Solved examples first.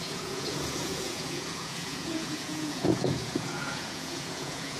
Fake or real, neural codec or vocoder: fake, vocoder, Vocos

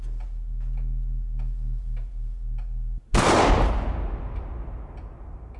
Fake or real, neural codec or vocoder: real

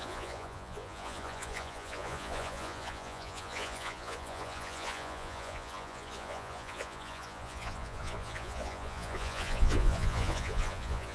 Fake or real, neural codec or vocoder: fake, vocoder, Vocos